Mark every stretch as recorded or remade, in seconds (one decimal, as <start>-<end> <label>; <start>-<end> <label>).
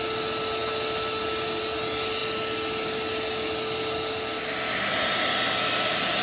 0.0-6.2 recorded